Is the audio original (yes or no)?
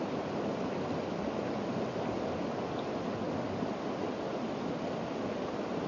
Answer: yes